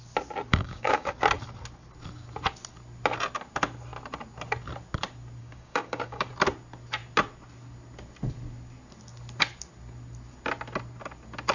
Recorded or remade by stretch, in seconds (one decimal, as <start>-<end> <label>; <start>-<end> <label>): 0.0-0.5 recorded; 0.5-1.1 remade; 1.1-5.4 recorded; 5.4-6.3 remade; 6.3-11.5 recorded